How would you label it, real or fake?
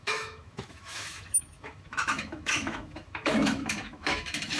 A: fake